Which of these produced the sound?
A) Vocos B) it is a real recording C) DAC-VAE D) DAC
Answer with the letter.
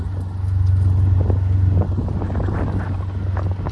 B